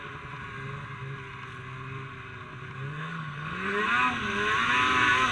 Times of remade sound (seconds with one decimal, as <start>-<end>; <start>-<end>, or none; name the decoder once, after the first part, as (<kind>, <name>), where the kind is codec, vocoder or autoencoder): 2.9-3.8 (codec, SNAC)